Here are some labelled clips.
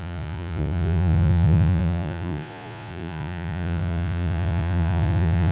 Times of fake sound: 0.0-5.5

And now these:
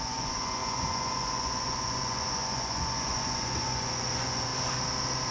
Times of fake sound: 0.0-4.5

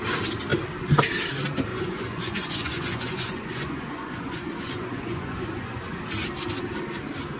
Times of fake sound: 1.7-6.0